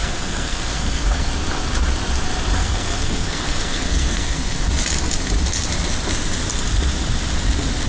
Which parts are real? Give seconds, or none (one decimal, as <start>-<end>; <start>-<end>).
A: 1.3-2.6; 4.7-7.9